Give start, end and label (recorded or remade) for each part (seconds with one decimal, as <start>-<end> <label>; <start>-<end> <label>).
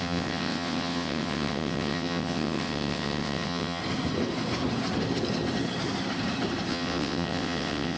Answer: 0.0-3.8 remade; 3.8-6.7 recorded; 6.7-8.0 remade